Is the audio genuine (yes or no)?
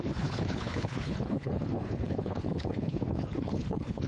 no